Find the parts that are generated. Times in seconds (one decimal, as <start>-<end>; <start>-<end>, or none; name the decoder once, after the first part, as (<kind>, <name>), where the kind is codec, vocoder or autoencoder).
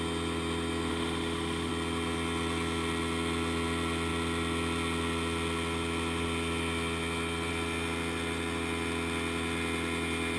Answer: 0.9-1.7 (autoencoder, DAC-VAE)